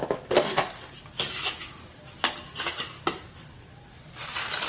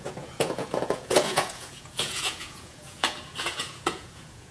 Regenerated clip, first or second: second